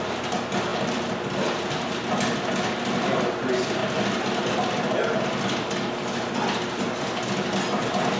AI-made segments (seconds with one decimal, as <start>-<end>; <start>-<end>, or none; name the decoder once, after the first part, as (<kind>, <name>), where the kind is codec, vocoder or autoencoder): 0.7-2.1 (vocoder, BigVGAN v2)